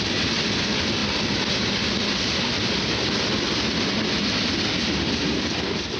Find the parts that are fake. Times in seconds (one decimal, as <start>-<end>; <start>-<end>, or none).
none